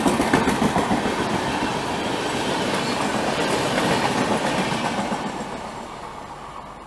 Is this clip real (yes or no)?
yes